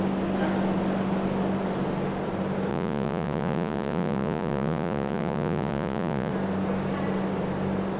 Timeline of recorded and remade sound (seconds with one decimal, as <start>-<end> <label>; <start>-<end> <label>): 0.0-2.7 recorded; 2.7-6.3 remade; 6.3-8.0 recorded